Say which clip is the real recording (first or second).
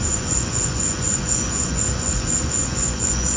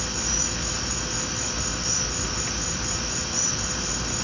second